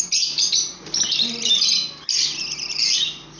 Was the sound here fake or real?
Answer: real